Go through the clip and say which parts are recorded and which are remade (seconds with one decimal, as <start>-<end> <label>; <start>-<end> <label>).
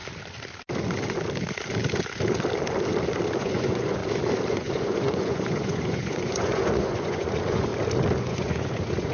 0.0-3.4 recorded; 3.4-4.0 remade; 4.0-4.5 recorded; 4.5-7.7 remade; 7.7-8.2 recorded; 8.2-9.1 remade